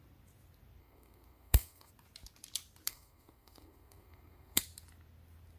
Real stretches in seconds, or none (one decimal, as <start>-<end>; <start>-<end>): 0.0-0.8; 1.9-2.9; 4.6-5.6